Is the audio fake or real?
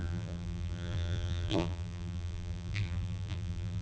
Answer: fake